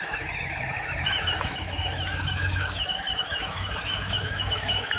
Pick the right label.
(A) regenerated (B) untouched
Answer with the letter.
A